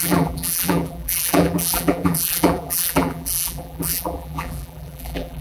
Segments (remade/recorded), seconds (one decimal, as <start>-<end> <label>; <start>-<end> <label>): 0.0-5.4 remade